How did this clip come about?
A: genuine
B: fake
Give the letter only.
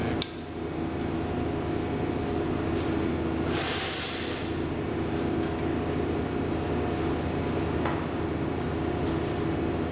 A